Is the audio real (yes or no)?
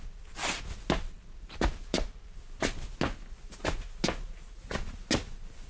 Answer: yes